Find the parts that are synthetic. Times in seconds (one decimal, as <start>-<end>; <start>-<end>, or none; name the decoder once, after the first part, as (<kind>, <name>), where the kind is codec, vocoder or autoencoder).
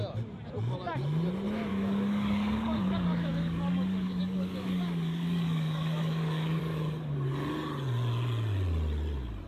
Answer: 1.7-6.6 (codec, DAC)